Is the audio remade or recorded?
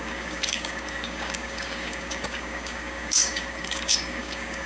remade